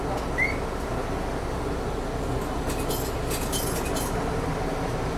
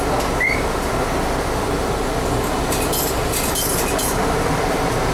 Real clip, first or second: first